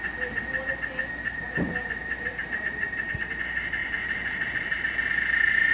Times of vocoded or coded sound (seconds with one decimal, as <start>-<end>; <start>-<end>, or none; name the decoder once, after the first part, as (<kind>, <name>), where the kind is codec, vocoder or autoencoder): 2.4-3.3 (vocoder, BigVGAN v2); 3.8-4.8